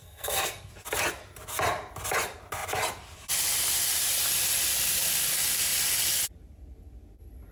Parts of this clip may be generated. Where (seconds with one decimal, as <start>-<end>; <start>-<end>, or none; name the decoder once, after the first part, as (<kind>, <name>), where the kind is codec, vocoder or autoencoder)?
0.0-0.7 (codec, SNAC)